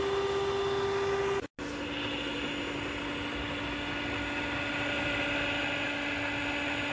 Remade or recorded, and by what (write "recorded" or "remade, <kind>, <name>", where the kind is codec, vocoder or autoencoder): recorded